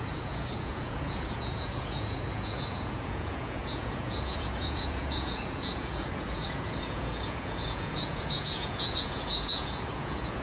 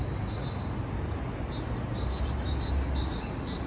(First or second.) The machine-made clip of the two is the first